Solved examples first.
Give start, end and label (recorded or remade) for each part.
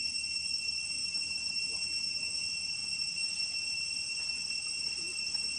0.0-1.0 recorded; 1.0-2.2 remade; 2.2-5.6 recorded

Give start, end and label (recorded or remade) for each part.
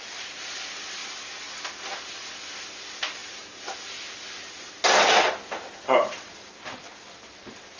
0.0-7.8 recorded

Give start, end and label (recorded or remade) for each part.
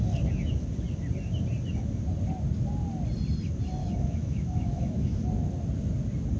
0.0-3.8 recorded; 3.8-5.2 remade; 5.2-6.4 recorded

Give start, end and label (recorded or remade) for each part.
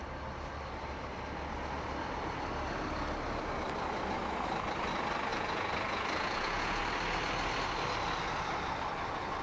0.0-5.3 recorded; 5.3-6.8 remade; 6.8-9.4 recorded